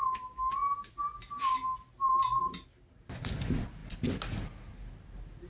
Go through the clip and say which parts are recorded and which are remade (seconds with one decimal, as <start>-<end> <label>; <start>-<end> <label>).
0.0-5.5 recorded